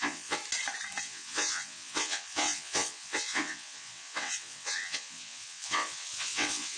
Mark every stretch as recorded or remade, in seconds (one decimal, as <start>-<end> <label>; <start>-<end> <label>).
0.0-0.4 remade; 0.4-1.0 recorded; 1.0-6.8 remade